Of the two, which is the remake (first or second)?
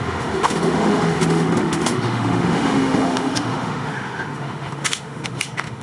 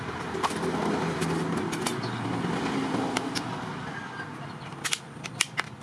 first